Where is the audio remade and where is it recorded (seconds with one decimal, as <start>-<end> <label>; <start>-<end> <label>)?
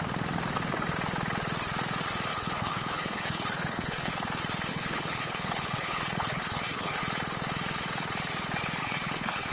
0.0-2.3 recorded; 2.3-4.1 remade; 4.1-4.7 recorded; 4.7-7.0 remade; 7.0-8.8 recorded; 8.8-9.5 remade